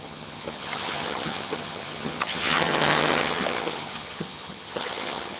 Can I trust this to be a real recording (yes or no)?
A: no